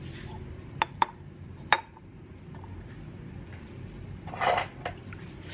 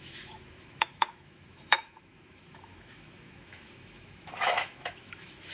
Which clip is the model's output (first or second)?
second